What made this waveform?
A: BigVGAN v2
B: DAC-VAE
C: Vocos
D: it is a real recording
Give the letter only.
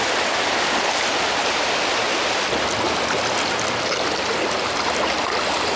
D